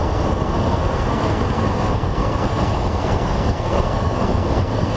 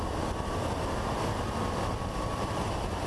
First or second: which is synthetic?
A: first